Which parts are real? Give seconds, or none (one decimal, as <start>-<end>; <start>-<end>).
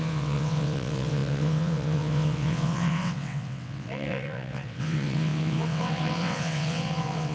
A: none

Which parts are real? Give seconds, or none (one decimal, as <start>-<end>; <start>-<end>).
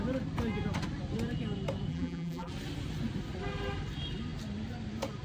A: 0.0-1.9; 2.5-5.2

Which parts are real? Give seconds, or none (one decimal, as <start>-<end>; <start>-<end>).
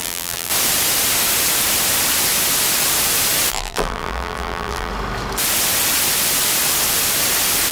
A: 0.5-3.5; 4.9-7.7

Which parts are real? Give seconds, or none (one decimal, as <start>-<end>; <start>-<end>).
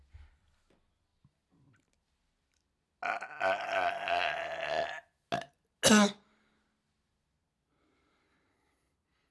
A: 0.0-9.3